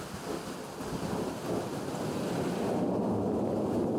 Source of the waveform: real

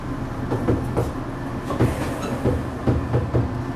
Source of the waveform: real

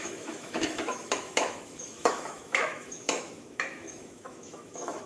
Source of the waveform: fake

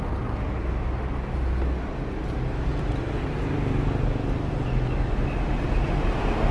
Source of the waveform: real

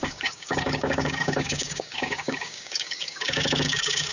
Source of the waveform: fake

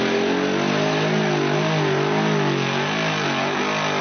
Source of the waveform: real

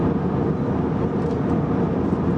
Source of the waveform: real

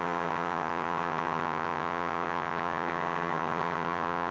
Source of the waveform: fake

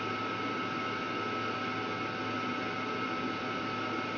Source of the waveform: real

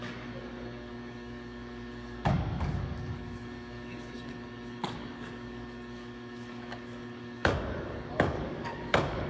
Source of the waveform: fake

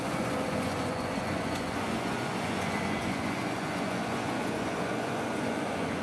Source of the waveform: fake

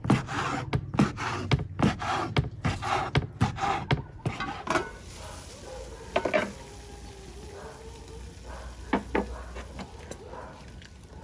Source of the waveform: real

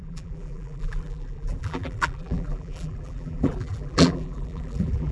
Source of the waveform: fake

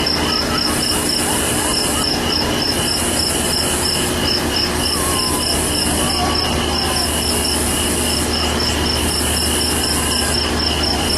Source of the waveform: real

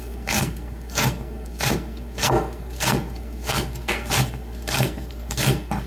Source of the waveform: fake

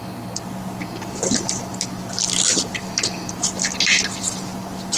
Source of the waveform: real